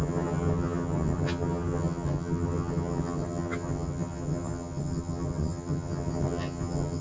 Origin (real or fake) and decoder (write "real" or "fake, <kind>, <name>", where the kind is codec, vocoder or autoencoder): fake, vocoder, HiFi-GAN